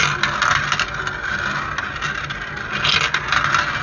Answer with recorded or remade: recorded